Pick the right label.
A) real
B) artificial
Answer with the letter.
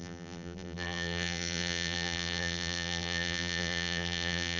B